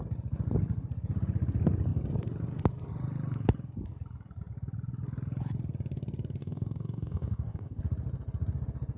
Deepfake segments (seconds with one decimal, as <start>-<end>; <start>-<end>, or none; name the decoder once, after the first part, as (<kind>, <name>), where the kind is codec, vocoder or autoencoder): 6.4-7.8 (codec, DAC)